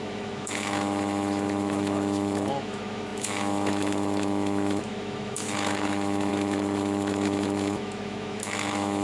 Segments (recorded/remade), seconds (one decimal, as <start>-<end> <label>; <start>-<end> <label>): 0.0-9.0 remade